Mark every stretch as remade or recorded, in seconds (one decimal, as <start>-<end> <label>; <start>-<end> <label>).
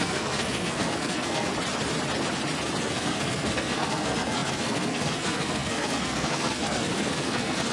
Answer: 0.0-1.5 remade; 1.5-2.8 recorded; 2.8-7.7 remade